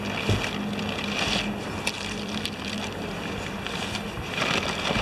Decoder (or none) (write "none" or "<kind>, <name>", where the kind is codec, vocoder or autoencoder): none